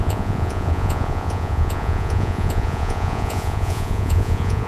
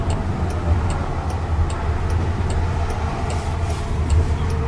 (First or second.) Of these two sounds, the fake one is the first